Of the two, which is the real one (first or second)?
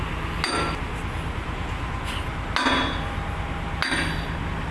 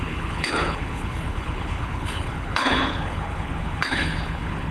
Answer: first